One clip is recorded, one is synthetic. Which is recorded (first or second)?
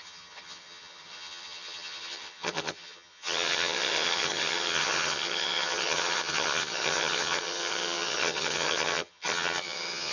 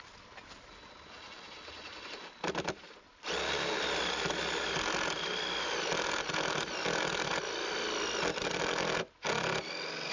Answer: second